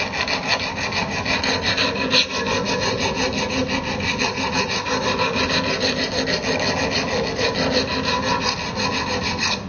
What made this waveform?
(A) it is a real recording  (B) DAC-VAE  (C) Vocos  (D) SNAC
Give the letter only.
A